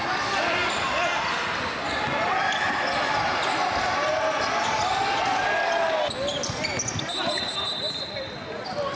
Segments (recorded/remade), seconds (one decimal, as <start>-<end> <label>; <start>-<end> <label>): 0.0-9.0 recorded